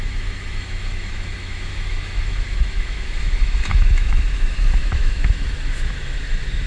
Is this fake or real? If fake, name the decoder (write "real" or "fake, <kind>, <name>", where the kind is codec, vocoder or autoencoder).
fake, autoencoder, DAC-VAE